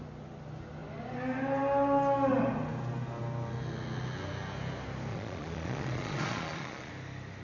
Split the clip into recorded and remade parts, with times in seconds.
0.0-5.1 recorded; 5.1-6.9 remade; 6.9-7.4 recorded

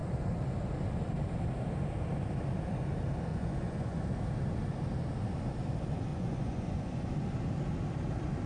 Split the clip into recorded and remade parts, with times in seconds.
0.0-3.3 recorded; 3.3-4.0 remade; 4.0-6.1 recorded; 6.1-7.1 remade; 7.1-8.5 recorded

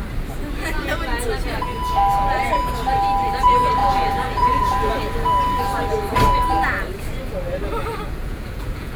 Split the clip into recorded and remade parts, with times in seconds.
0.0-3.8 recorded; 3.8-4.9 remade; 4.9-7.8 recorded; 7.8-9.0 remade

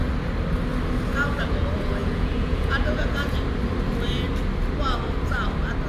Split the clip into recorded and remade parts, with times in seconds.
0.0-2.0 recorded; 2.0-3.4 remade; 3.4-5.9 recorded

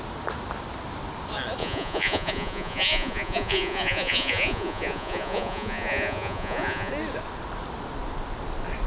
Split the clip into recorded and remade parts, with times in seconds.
0.0-1.6 recorded; 1.6-6.9 remade; 6.9-8.9 recorded

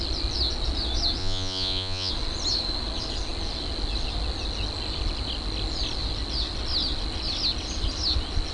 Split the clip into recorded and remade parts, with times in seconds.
0.0-1.2 recorded; 1.2-2.1 remade; 2.1-8.5 recorded

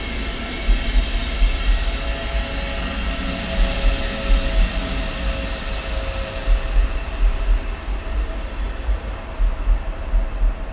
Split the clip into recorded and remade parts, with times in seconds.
0.0-10.7 recorded